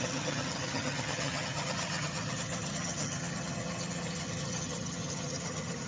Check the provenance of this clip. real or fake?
fake